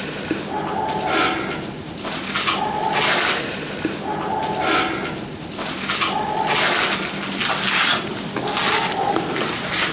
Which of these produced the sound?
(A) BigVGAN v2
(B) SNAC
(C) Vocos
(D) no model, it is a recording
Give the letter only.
D